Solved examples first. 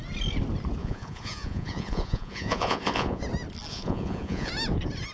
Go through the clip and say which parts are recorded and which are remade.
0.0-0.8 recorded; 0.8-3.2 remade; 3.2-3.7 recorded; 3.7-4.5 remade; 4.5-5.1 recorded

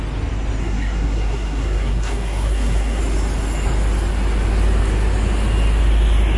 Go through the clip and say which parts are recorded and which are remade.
0.0-0.6 recorded; 0.6-3.0 remade; 3.0-6.4 recorded

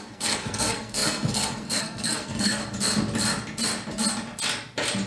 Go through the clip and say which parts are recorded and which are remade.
0.0-2.6 remade; 2.6-5.1 recorded

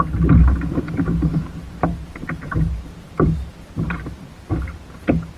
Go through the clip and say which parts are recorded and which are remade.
0.0-1.3 recorded; 1.3-4.5 remade; 4.5-5.4 recorded

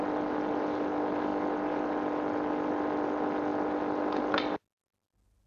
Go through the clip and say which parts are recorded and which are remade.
0.0-5.5 recorded

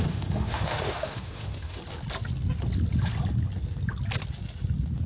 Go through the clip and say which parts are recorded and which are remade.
0.0-1.8 remade; 1.8-5.1 recorded